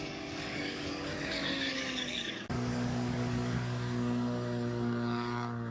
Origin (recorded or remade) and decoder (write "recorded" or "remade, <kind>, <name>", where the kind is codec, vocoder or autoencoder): remade, codec, DAC